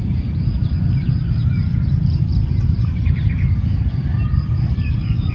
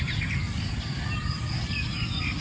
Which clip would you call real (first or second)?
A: second